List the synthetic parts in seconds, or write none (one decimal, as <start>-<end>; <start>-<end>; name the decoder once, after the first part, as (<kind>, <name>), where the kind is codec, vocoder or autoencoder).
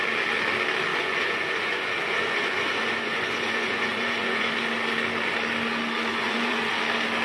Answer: 0.9-4.5 (vocoder, Vocos); 6.1-6.7